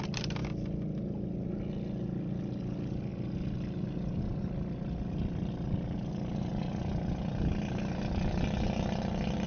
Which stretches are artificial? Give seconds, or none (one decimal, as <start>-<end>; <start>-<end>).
none

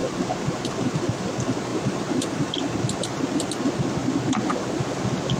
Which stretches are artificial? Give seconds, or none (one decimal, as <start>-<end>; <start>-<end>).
1.7-2.8

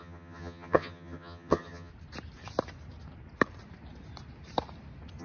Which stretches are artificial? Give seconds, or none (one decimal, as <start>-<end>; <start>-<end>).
0.0-1.9